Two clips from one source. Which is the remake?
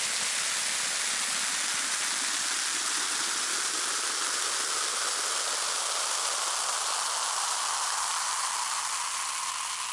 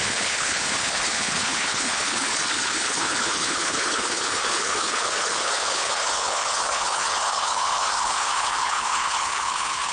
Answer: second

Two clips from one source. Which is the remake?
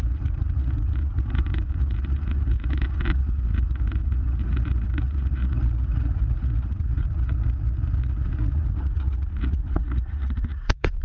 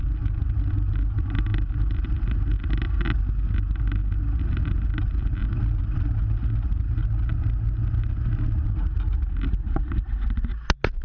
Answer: first